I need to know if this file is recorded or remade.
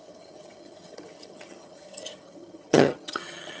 remade